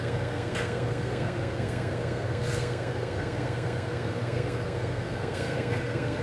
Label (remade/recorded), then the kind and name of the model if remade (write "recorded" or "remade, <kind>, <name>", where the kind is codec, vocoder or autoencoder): remade, codec, SNAC